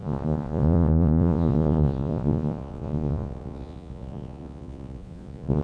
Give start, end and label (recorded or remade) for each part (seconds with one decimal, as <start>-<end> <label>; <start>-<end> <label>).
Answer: 0.0-5.6 remade